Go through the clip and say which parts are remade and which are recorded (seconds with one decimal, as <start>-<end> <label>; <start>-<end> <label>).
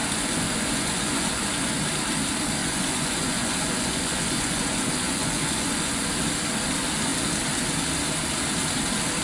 0.0-1.8 remade; 1.8-2.6 recorded; 2.6-6.1 remade; 6.1-9.2 recorded